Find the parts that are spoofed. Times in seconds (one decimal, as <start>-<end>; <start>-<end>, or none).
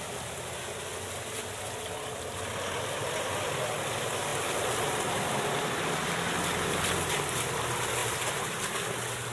8.0-8.7